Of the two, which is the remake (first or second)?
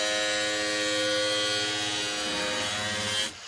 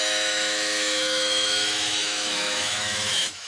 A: second